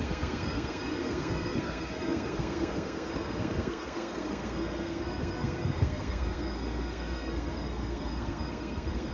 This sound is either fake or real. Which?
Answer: fake